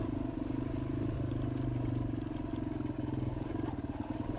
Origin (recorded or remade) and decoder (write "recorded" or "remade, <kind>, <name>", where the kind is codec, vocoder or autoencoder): recorded